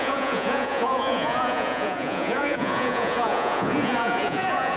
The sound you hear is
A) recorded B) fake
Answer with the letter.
B